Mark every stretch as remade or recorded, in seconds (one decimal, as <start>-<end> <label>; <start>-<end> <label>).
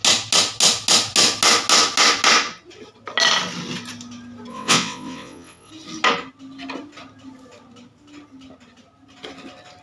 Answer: 0.0-4.5 recorded; 4.5-5.7 remade; 5.7-9.8 recorded